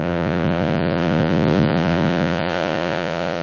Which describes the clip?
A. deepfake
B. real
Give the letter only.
A